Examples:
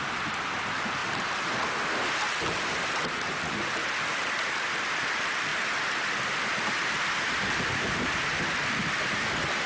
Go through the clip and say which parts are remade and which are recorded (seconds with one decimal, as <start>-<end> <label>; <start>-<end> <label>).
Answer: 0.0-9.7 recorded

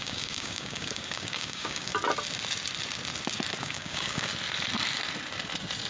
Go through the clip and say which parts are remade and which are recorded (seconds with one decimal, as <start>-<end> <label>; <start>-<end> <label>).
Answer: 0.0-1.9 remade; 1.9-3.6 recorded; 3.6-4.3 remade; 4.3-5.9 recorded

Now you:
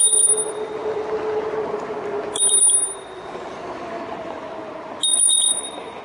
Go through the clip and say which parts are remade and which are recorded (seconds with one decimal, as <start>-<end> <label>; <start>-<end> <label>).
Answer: 0.0-5.1 recorded; 5.1-6.0 remade

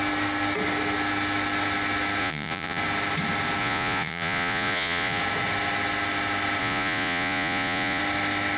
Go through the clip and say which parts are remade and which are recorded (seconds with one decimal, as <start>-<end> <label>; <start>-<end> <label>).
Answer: 0.0-2.2 recorded; 2.2-2.8 remade; 2.8-3.6 recorded; 3.6-5.2 remade; 5.2-6.6 recorded; 6.6-8.0 remade; 8.0-8.6 recorded